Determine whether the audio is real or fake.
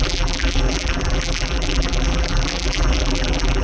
fake